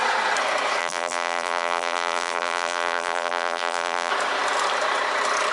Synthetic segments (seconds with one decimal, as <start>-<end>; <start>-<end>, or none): 0.8-4.1